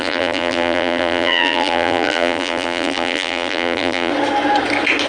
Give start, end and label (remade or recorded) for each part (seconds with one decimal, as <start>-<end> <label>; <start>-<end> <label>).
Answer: 0.0-4.1 remade; 4.1-5.1 recorded